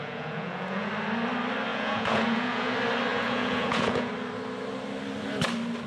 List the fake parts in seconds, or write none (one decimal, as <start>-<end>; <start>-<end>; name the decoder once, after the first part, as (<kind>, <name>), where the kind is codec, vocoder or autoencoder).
0.0-0.9 (vocoder, Vocos); 1.7-2.7; 3.1-4.1